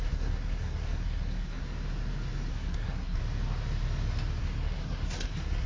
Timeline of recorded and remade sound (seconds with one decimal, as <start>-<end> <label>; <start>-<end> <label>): 0.0-1.6 remade; 1.6-2.5 recorded; 2.5-3.2 remade; 3.2-4.4 recorded; 4.4-5.7 remade